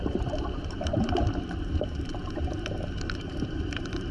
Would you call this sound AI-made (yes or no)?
yes